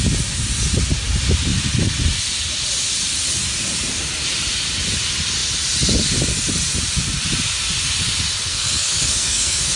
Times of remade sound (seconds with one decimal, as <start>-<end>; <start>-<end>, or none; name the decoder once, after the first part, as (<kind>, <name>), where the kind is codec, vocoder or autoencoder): 8.5-9.8 (codec, SNAC)